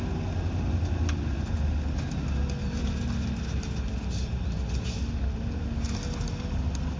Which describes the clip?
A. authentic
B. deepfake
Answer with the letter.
A